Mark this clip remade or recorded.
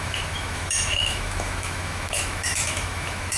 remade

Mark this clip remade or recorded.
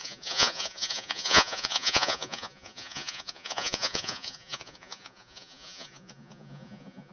remade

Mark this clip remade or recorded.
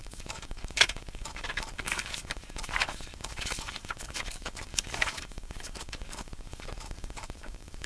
remade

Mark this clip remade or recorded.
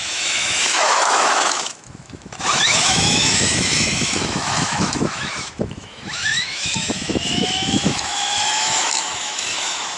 remade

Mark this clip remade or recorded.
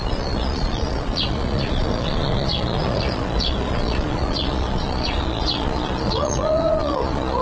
remade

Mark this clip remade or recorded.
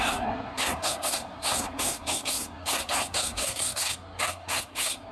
remade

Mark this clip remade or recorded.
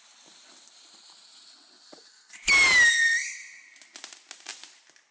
recorded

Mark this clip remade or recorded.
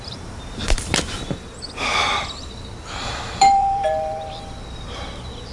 remade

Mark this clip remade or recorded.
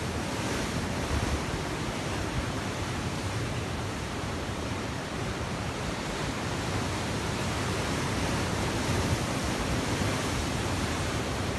remade